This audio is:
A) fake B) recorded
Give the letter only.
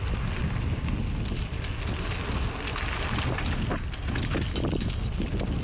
B